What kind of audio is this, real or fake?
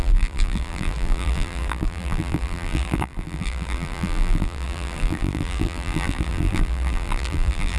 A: fake